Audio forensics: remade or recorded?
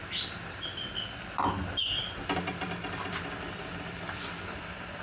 recorded